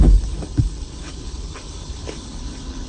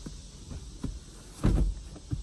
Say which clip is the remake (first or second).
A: first